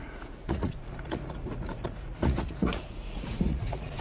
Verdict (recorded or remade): remade